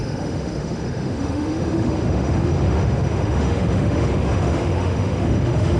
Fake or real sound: fake